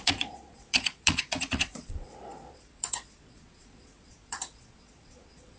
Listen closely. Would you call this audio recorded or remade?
remade